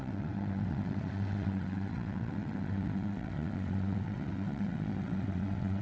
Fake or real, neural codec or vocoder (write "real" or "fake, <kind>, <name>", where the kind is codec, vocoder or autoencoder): fake, vocoder, WaveNeXt